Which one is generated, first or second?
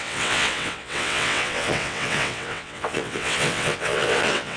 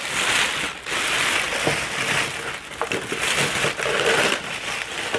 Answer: first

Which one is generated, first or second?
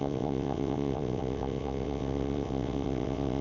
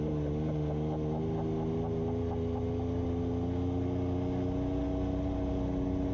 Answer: first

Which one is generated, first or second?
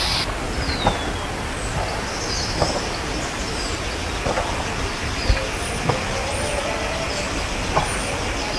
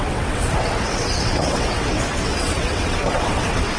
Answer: second